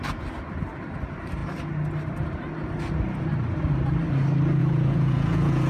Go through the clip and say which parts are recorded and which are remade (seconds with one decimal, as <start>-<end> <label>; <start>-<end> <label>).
0.0-4.6 recorded; 4.6-5.7 remade